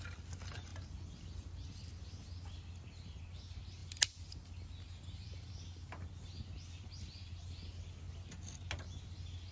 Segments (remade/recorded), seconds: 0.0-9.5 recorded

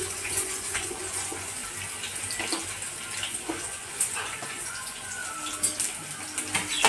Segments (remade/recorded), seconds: 0.0-1.6 remade; 1.6-3.3 recorded; 3.3-5.2 remade; 5.2-6.9 recorded

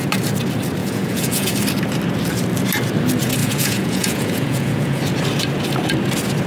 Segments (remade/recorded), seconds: 0.0-0.8 recorded; 0.8-1.5 remade; 1.5-3.4 recorded; 3.4-5.0 remade; 5.0-6.5 recorded

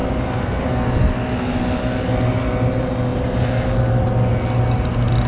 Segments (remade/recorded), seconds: 0.0-5.3 recorded

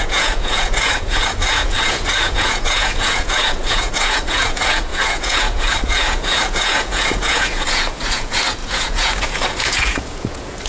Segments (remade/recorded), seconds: 0.0-10.7 remade

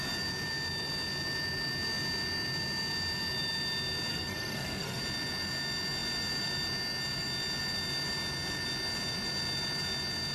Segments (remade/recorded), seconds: 0.0-4.1 recorded; 4.1-5.0 remade; 5.0-10.3 recorded

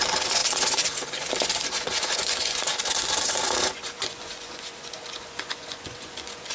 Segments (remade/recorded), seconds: 0.0-6.5 remade

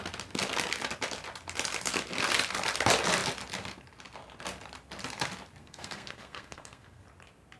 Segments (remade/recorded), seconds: 0.0-5.6 recorded; 5.6-7.0 remade; 7.0-7.6 recorded